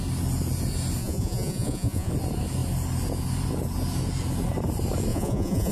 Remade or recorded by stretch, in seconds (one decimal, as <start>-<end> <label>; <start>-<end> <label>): 0.0-1.0 recorded; 1.0-2.1 remade; 2.1-5.1 recorded; 5.1-5.7 remade